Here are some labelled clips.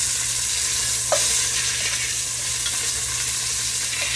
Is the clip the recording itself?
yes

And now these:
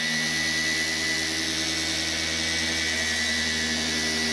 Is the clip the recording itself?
yes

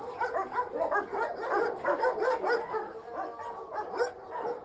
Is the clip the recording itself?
yes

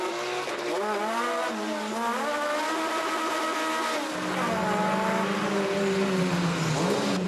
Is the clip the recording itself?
yes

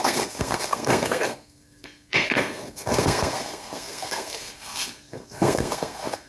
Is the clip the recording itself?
no